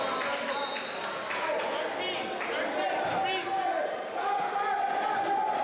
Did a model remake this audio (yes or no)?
no